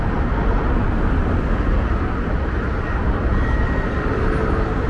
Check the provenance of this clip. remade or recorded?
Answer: recorded